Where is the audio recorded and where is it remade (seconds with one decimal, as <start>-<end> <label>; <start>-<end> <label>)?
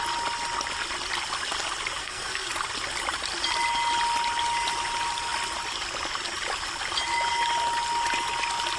0.0-2.0 recorded; 2.0-2.5 remade; 2.5-8.8 recorded